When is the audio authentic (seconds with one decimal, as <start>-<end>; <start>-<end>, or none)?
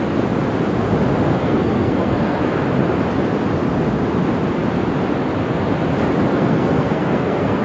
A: 0.0-1.3; 2.4-6.3